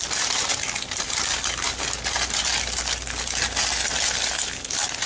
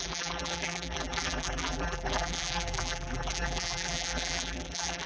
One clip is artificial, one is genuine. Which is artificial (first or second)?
second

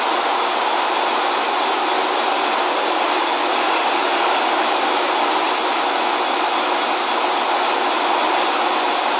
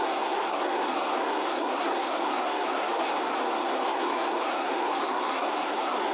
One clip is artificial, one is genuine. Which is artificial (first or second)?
second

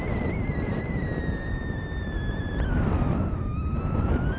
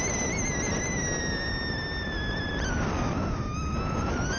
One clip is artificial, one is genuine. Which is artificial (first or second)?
first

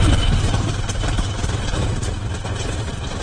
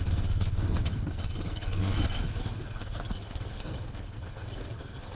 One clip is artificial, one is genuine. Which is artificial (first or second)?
second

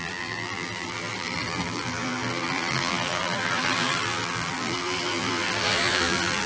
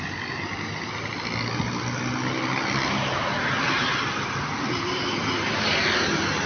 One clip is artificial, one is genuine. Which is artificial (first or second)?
first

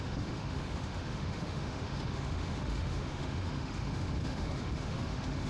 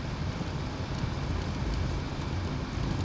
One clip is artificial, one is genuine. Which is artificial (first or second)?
first